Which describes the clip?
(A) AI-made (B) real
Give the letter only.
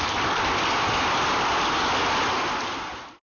B